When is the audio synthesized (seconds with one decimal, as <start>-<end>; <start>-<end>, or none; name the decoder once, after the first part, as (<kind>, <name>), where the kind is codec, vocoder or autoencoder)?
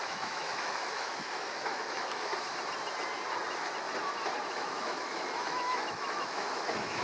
0.0-2.3 (autoencoder, DAC-VAE); 4.5-7.0